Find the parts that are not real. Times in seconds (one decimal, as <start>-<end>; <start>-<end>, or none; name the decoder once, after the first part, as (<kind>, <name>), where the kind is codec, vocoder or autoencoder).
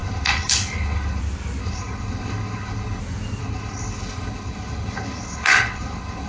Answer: 0.0-1.2 (codec, HILCodec); 1.6-3.0; 3.4-6.3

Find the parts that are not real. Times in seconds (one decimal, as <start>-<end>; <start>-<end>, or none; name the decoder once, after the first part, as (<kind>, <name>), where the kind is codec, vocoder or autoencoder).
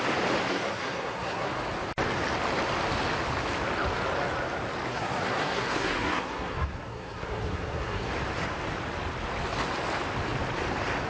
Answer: 0.5-1.5 (codec, SNAC); 4.9-8.1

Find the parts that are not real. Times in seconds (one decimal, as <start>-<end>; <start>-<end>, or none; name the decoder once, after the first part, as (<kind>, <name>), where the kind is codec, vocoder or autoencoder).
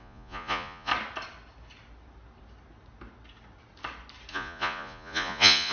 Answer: 0.0-0.9 (vocoder, Vocos); 4.3-5.7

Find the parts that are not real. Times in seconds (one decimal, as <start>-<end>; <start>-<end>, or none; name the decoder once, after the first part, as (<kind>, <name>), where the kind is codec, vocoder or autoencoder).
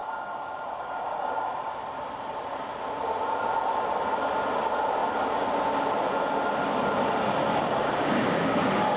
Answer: 0.0-1.7 (codec, DAC); 7.5-9.0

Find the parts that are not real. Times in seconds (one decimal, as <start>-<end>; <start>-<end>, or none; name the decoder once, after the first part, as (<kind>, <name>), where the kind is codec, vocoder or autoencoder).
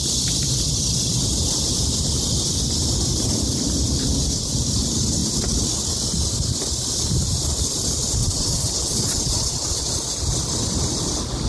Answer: 8.2-9.9 (vocoder, WaveNeXt)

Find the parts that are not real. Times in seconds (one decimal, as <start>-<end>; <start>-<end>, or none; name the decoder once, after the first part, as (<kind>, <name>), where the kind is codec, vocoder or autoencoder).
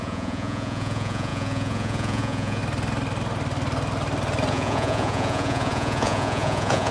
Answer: 0.0-2.6 (vocoder, Vocos); 4.5-6.9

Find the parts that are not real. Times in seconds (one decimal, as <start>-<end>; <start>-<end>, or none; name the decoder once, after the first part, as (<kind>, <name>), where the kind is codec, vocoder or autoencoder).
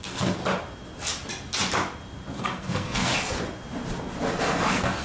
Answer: 0.0-0.4 (codec, SNAC); 2.4-3.1; 4.4-5.0